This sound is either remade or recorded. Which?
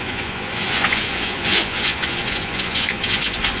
remade